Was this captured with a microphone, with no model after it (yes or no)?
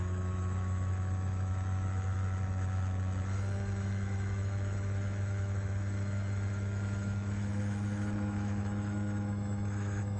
no